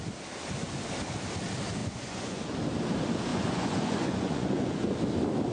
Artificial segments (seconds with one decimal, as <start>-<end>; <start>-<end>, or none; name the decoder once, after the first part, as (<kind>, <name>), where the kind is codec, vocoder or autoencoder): 1.8-2.4 (vocoder, Vocos); 3.3-5.0